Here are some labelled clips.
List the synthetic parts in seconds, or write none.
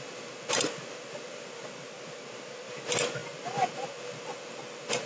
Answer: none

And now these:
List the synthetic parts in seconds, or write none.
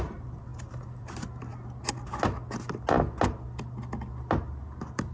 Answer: 0.5-1.0 (vocoder, BigVGAN v2)